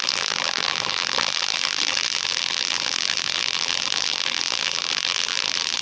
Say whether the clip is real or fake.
fake